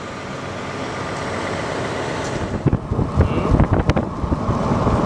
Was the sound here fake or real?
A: real